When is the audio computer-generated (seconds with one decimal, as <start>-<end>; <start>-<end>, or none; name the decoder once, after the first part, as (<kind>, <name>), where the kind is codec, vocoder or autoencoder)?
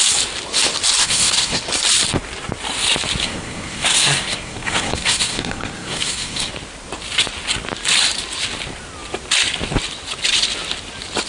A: 1.0-1.6 (codec, SNAC); 3.2-6.5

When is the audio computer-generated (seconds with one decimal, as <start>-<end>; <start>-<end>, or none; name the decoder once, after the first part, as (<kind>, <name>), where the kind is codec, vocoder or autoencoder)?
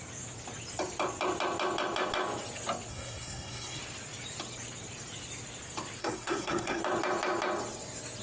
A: 2.9-3.8 (codec, SNAC); 6.0-6.8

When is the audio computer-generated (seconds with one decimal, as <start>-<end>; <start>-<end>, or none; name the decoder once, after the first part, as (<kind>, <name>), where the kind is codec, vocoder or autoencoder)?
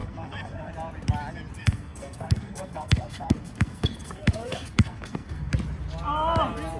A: 0.0-0.7 (codec, SNAC); 1.6-5.5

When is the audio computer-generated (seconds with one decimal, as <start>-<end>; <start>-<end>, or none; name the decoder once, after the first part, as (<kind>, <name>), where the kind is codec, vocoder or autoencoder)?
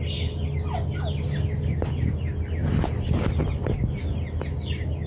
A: none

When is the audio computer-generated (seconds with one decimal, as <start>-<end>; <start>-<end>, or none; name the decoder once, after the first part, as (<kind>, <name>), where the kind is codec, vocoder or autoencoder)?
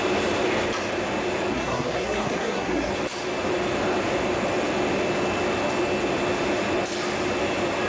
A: 1.5-2.9 (codec, SNAC)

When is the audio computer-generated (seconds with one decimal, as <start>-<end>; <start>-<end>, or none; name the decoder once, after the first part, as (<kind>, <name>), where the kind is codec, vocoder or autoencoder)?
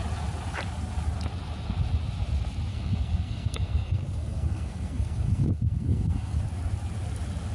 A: 2.7-6.4 (codec, SNAC)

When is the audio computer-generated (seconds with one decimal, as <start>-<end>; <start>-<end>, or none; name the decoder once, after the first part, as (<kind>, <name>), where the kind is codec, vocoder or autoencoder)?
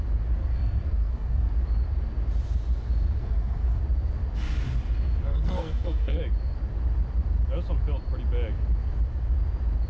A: 0.4-1.5 (codec, SNAC); 3.2-3.8; 5.3-6.2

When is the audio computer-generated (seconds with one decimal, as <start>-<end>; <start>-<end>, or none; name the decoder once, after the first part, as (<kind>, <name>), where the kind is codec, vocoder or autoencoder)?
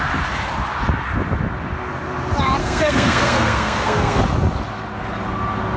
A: 2.6-4.2 (codec, SNAC)